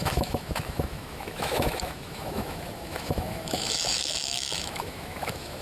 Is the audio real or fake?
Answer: fake